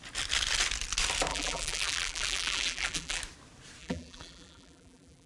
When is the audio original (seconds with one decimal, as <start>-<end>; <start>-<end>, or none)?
0.0-1.3; 3.2-3.8